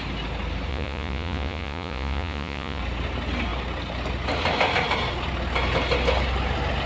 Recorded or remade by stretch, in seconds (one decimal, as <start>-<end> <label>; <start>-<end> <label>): 0.0-0.7 recorded; 0.7-2.8 remade; 2.8-6.9 recorded